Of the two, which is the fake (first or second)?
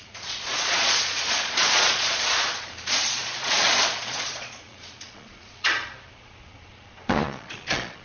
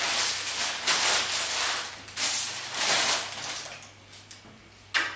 first